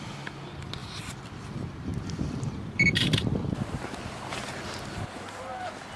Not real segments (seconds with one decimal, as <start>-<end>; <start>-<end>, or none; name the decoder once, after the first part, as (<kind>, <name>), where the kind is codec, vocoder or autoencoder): none